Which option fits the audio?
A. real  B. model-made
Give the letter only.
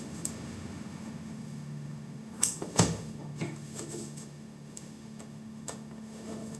B